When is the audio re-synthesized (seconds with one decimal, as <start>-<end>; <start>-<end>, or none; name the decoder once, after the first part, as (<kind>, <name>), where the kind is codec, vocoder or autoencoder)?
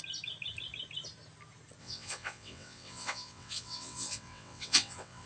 1.8-5.3 (vocoder, WaveNeXt)